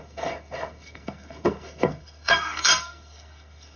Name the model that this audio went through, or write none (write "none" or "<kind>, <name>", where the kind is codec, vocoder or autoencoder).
codec, SNAC